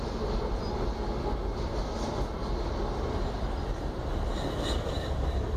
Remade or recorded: recorded